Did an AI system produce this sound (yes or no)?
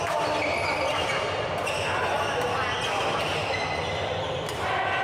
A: no